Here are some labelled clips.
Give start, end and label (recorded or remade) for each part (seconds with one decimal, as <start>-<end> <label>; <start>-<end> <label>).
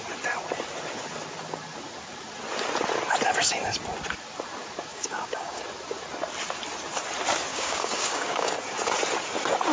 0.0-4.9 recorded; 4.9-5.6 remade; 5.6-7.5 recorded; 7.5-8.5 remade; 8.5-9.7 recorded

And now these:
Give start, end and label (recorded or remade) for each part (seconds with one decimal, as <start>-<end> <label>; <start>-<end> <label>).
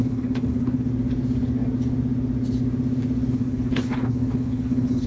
0.0-0.9 remade; 0.9-3.3 recorded; 3.3-5.1 remade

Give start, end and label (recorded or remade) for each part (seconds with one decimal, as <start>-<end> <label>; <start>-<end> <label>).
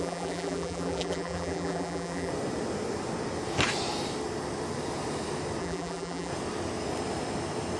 0.0-2.3 remade; 2.3-5.6 recorded; 5.6-6.3 remade; 6.3-7.8 recorded